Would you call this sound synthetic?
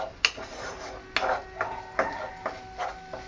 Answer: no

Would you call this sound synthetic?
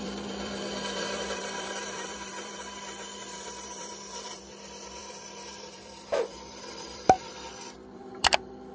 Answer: yes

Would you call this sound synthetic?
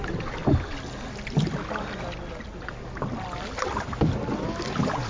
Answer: no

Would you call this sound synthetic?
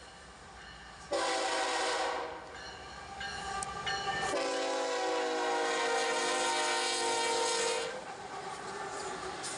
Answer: no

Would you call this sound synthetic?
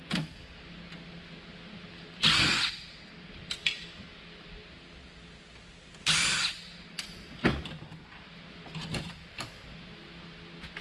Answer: no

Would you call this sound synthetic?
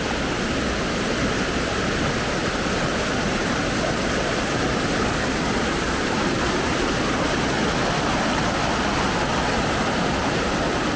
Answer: no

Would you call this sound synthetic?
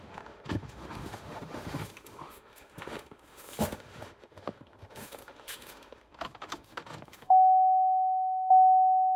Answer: yes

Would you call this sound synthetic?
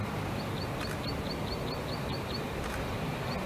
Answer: no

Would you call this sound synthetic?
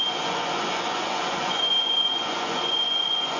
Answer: yes